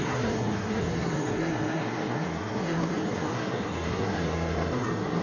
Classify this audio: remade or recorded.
remade